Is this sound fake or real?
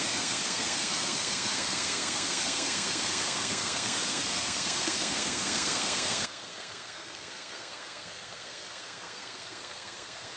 fake